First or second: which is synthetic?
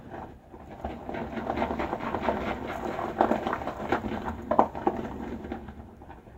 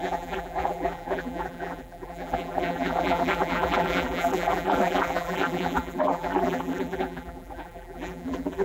second